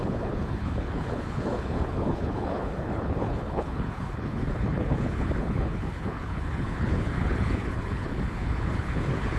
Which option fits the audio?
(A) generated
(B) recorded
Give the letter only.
A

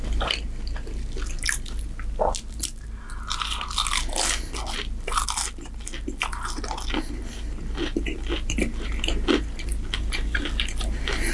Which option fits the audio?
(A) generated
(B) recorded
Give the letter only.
B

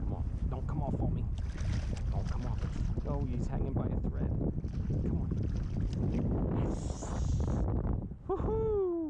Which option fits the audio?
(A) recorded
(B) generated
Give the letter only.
A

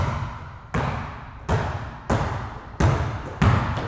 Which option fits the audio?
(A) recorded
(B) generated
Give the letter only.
A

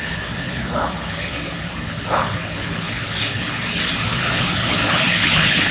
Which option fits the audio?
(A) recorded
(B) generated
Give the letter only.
B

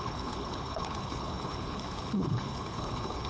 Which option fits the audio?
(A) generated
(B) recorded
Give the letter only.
A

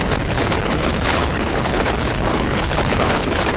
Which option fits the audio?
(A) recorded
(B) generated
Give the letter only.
B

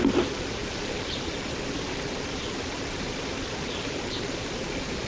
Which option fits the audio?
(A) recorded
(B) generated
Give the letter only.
A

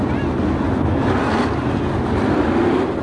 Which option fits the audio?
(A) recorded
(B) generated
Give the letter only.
A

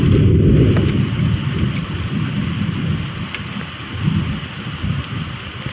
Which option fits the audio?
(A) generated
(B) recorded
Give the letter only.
B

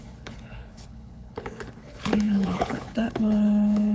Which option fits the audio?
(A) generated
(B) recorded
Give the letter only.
A